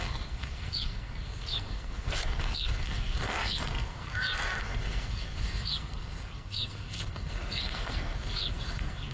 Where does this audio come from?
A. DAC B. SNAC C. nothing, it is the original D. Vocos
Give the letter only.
B